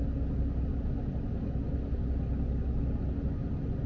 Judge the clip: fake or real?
real